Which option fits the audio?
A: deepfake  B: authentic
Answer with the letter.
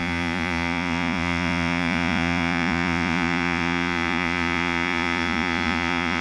A